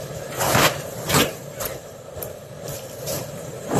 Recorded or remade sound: remade